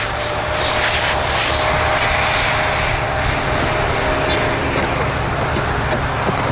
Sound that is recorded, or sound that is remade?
recorded